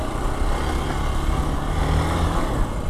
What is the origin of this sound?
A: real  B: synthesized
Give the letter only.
A